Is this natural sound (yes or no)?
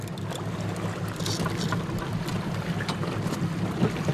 yes